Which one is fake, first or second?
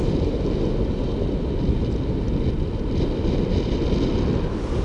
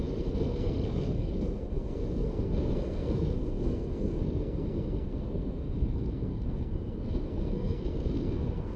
second